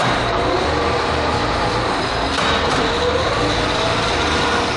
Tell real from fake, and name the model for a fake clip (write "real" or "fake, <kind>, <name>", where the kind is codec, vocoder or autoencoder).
real